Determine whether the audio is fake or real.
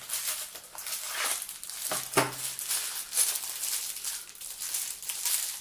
real